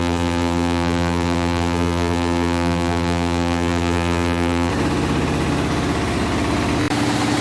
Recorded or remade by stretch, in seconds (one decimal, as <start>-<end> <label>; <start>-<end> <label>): 0.0-4.7 remade; 4.7-7.4 recorded